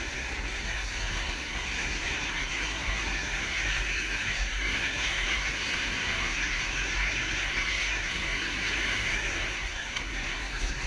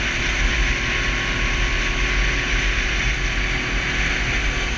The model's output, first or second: first